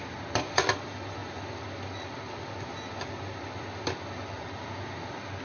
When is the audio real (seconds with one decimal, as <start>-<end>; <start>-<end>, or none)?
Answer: 0.0-5.4